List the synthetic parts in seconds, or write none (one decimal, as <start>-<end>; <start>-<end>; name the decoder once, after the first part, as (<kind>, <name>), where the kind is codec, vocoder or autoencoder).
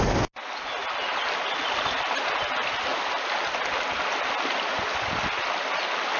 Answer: none